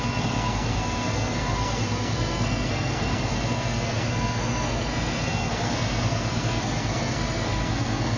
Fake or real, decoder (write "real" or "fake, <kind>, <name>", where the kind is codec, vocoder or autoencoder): fake, codec, SNAC